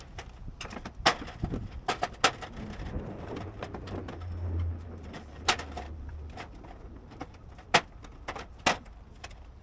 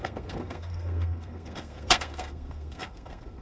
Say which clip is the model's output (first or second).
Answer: second